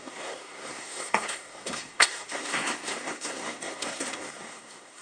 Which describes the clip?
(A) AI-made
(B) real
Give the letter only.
A